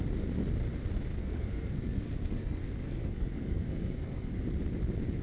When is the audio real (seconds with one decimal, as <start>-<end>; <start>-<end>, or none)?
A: 0.0-1.2; 4.3-5.2